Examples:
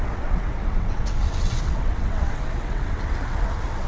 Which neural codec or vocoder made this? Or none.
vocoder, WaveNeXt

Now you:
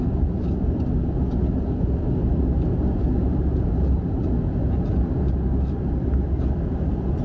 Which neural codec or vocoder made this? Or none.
none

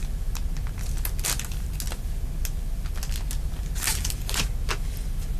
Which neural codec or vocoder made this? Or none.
none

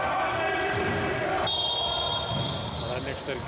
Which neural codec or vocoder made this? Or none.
none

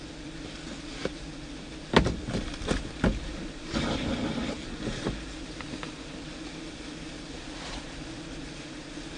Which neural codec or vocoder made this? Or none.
none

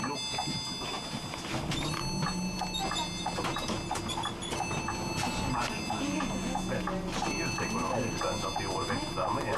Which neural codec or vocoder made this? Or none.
none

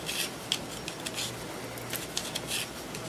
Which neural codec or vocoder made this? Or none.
none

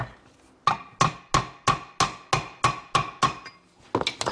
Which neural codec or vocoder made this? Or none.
none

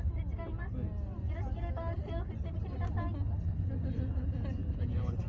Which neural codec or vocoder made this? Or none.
none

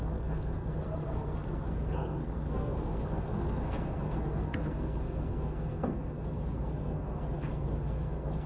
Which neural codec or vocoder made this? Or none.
codec, SNAC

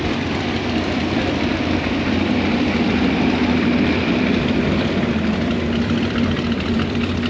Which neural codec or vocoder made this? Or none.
vocoder, BigVGAN v2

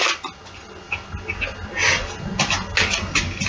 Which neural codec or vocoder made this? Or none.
none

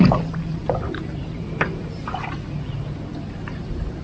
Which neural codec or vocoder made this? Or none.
none